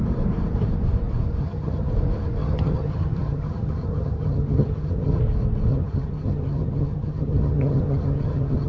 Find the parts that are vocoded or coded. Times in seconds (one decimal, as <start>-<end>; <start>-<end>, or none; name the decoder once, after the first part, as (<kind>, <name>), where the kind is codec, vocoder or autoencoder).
1.4-1.9 (vocoder, HiFi-GAN); 2.4-5.2; 5.7-8.7